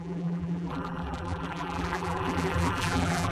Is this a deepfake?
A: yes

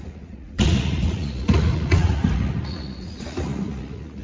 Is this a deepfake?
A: yes